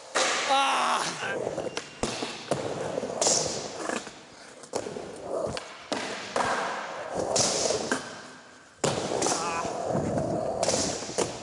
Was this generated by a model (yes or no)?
no